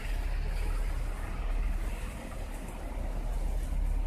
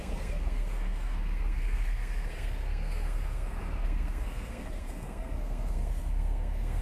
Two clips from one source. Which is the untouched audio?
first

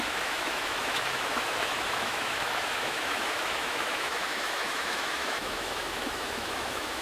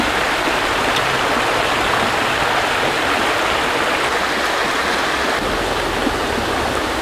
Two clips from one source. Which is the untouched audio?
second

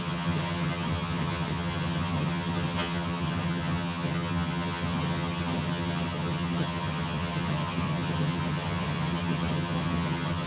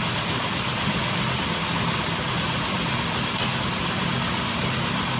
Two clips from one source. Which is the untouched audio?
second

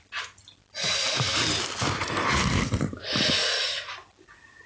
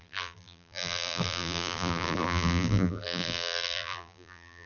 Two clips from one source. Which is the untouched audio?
first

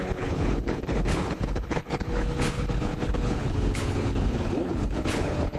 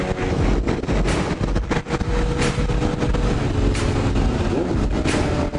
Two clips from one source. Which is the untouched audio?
second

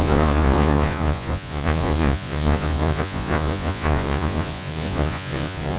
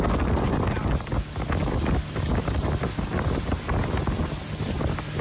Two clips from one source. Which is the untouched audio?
second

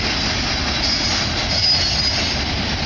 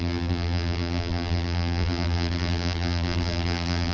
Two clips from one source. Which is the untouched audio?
first